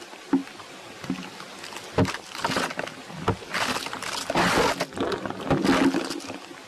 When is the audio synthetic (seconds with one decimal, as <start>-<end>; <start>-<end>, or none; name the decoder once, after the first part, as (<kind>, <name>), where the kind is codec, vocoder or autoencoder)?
none